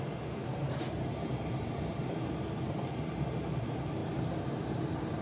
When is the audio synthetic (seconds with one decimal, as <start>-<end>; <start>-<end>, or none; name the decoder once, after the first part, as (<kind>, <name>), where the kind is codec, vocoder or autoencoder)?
0.0-4.0 (vocoder, BigVGAN v2); 4.6-5.2